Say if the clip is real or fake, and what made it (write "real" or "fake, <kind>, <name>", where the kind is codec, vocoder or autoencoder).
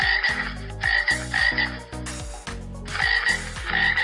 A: real